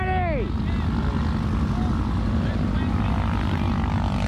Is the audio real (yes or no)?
yes